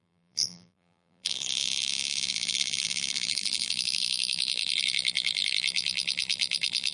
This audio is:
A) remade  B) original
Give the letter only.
A